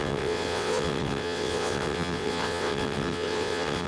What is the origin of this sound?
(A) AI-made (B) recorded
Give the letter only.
A